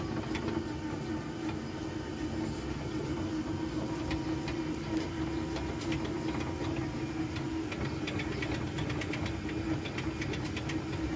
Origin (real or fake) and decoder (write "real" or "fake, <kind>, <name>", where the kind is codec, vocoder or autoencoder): real